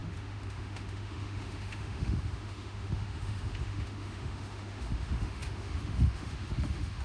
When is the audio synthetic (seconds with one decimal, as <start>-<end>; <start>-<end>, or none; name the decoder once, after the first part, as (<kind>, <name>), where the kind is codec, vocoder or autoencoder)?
0.0-7.0 (autoencoder, DAC-VAE)